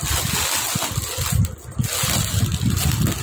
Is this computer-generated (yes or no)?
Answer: no